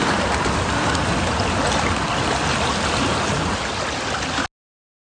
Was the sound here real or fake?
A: real